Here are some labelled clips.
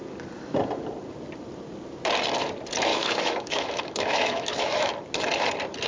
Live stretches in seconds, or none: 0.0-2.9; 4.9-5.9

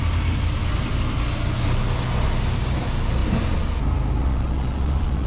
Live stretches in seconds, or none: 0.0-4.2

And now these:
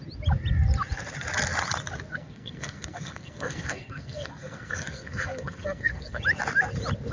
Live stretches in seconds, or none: 0.0-2.1; 6.2-7.1